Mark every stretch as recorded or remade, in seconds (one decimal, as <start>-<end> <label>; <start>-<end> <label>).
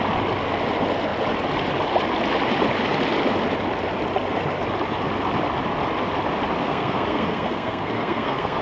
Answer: 0.0-6.6 recorded; 6.6-8.6 remade